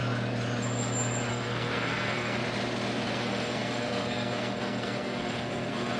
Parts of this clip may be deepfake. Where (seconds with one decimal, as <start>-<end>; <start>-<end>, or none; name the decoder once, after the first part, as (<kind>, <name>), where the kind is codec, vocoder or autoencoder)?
1.3-2.4 (codec, SNAC); 3.1-6.0

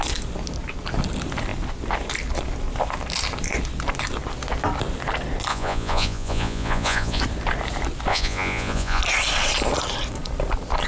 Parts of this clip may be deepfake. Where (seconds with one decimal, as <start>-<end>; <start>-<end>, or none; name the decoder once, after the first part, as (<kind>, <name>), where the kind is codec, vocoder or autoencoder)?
5.5-7.2 (vocoder, Vocos); 8.1-9.0

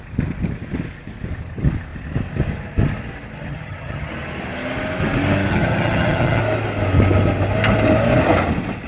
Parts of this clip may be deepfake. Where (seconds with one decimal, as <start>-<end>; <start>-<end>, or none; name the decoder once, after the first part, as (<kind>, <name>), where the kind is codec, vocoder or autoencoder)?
3.5-4.1 (vocoder, HiFi-GAN); 5.5-6.4

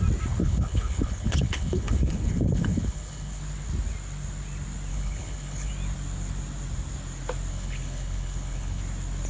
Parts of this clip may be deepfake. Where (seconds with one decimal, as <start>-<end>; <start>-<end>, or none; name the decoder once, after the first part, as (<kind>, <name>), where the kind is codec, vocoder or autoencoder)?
0.4-3.4 (codec, HILCodec); 4.9-5.7; 7.5-8.8

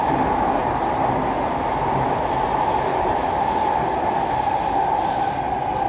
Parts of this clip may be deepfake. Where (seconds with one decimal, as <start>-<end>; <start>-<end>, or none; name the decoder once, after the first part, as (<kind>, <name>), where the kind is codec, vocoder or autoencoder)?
none

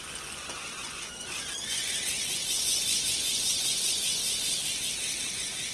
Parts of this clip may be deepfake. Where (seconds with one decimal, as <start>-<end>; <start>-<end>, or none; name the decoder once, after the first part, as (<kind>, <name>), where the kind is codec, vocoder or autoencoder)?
0.0-4.2 (vocoder, Vocos); 5.3-5.7

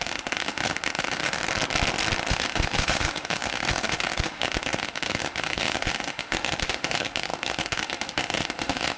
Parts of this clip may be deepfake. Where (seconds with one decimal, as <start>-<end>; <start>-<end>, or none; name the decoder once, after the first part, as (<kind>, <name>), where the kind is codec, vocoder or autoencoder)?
0.0-1.4 (autoencoder, DAC-VAE); 2.3-9.0